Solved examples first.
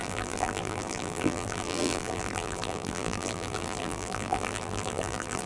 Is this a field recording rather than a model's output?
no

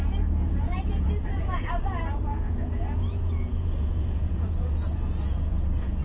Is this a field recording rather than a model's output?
no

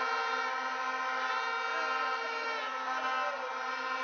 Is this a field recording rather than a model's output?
yes